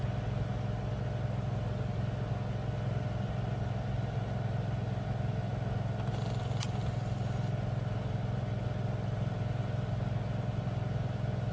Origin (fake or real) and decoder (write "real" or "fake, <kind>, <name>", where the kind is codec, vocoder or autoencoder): real